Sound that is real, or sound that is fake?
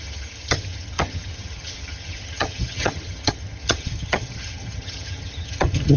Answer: fake